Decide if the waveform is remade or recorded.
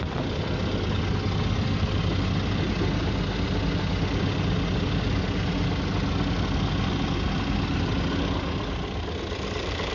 recorded